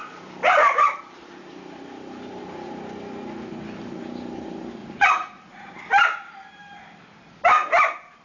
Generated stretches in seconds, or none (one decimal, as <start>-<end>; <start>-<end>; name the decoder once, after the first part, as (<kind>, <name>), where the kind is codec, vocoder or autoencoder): 4.8-5.7 (vocoder, Vocos)